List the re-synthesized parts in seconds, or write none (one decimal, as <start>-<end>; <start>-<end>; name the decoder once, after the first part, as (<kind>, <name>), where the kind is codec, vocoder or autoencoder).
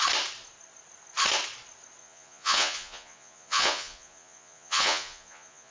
2.0-5.7 (vocoder, Vocos)